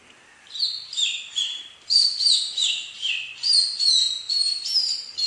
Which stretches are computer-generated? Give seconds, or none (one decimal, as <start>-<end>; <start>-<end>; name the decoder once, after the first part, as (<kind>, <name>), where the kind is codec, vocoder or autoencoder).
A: 0.0-5.3 (vocoder, BigVGAN v2)